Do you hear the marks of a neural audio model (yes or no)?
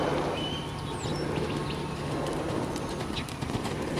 no